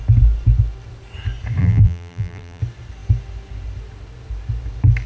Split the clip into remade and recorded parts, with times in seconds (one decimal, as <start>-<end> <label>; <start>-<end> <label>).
0.0-1.6 recorded; 1.6-2.6 remade; 2.6-5.1 recorded